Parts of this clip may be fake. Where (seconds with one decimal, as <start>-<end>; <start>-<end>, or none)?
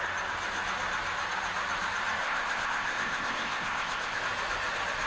2.2-4.2